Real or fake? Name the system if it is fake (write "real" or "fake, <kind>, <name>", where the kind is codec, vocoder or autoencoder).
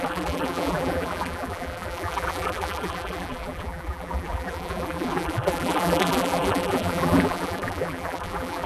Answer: fake, vocoder, BigVGAN v2